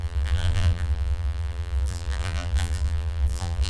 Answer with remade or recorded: remade